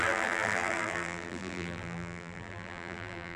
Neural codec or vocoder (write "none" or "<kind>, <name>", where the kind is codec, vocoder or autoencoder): vocoder, BigVGAN v2